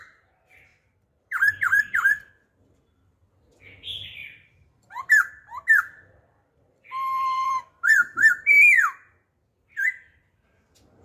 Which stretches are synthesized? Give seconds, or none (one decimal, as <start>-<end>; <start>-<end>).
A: 0.7-2.3; 4.2-8.3